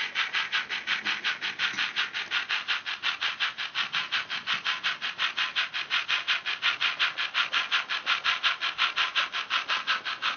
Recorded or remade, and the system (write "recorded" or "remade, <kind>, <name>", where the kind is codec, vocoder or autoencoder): recorded